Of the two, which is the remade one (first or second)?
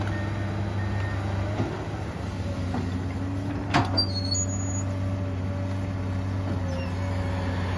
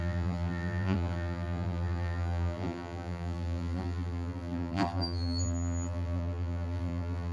second